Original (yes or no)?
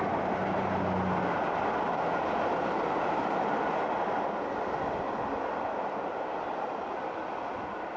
yes